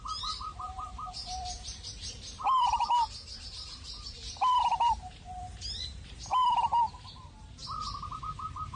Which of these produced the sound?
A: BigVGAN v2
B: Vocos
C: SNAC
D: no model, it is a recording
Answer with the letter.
A